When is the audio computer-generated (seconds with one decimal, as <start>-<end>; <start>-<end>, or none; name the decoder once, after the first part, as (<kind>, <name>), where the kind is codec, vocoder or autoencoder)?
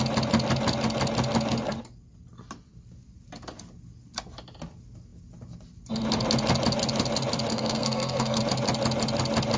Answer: 7.5-8.4 (codec, SNAC)